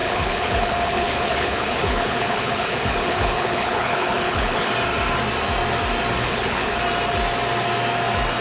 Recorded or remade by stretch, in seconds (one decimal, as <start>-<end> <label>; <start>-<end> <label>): 0.0-4.7 remade; 4.7-6.2 recorded; 6.2-6.8 remade; 6.8-8.4 recorded